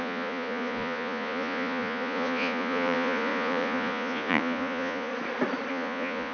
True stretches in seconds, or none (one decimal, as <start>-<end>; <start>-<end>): 5.1-5.7